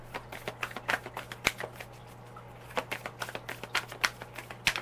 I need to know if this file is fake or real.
real